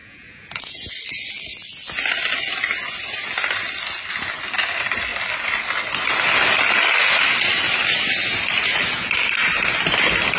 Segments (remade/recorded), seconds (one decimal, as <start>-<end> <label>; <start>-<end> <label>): 0.0-0.9 remade; 0.9-10.4 recorded